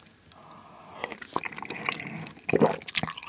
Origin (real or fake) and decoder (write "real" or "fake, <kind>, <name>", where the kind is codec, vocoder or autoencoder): real